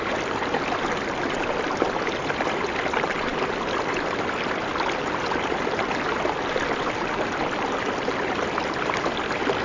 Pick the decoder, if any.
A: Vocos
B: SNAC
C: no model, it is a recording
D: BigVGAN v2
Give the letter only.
C